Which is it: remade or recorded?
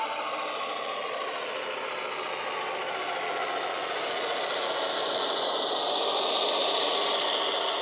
recorded